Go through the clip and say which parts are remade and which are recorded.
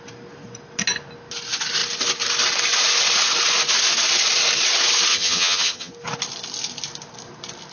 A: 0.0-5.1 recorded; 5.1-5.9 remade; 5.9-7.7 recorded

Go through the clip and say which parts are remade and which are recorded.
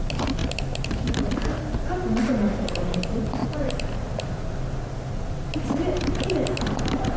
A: 0.0-7.2 recorded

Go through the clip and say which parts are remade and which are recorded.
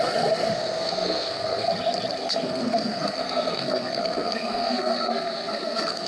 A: 0.0-0.4 recorded; 0.4-1.7 remade; 1.7-2.2 recorded; 2.2-6.1 remade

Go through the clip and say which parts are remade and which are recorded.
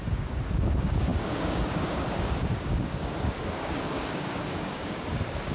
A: 0.0-5.5 remade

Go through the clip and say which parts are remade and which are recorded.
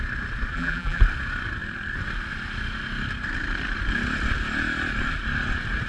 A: 0.0-0.5 recorded; 0.5-1.0 remade; 1.0-5.9 recorded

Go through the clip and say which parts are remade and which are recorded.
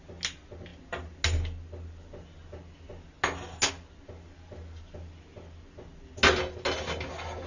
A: 0.0-7.5 recorded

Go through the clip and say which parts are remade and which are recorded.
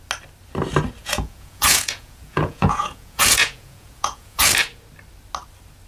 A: 0.0-1.0 recorded; 1.0-4.5 remade; 4.5-5.9 recorded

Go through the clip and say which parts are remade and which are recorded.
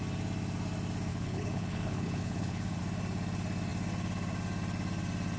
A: 0.0-1.1 recorded; 1.1-2.8 remade; 2.8-5.4 recorded